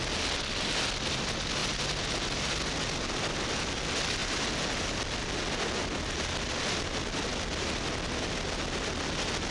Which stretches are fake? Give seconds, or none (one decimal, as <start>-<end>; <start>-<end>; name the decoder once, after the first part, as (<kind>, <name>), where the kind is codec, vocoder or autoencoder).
7.3-7.8 (vocoder, BigVGAN v2)